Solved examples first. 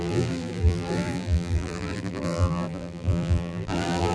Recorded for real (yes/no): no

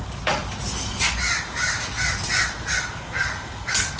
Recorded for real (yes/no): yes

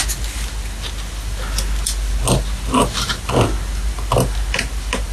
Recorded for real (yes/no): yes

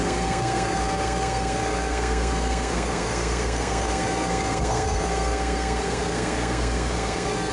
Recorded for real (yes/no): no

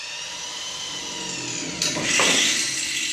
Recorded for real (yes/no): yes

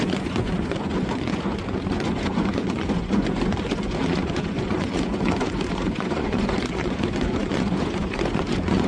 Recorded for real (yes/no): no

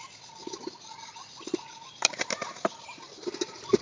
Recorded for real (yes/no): yes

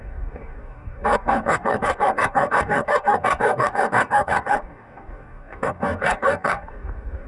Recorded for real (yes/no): no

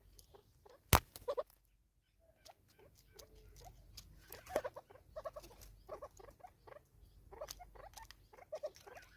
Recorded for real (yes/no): yes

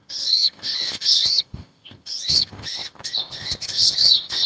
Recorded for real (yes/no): no